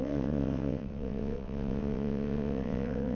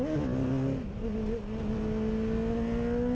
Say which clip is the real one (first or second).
second